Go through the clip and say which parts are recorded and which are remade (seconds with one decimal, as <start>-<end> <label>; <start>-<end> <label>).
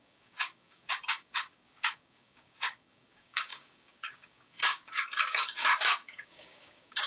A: 0.0-7.1 remade